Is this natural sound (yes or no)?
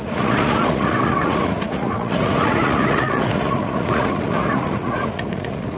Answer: no